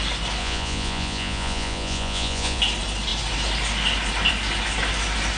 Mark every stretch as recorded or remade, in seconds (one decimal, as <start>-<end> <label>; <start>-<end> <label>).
0.0-0.4 recorded; 0.4-2.6 remade; 2.6-5.4 recorded